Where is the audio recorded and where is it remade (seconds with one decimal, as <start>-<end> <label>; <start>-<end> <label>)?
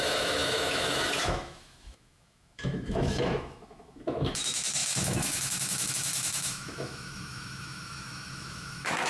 0.0-9.1 remade